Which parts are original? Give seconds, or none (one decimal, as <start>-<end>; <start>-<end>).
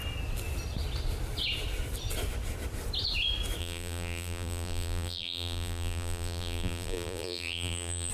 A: 0.0-3.6